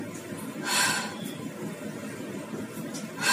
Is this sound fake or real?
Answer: real